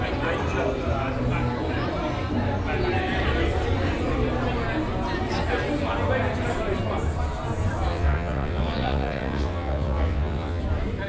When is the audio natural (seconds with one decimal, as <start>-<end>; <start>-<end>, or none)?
0.0-7.9; 10.6-11.1